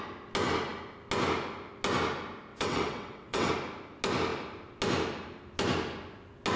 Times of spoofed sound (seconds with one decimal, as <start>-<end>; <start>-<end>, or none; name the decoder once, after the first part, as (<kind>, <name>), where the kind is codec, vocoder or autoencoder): 2.5-3.5 (vocoder, WaveNeXt)